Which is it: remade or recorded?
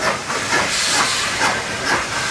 recorded